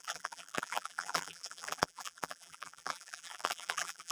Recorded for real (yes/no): no